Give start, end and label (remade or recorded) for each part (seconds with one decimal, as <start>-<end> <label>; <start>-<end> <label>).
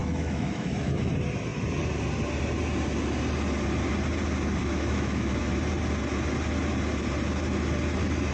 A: 0.0-1.1 remade; 1.1-4.6 recorded; 4.6-5.4 remade; 5.4-8.3 recorded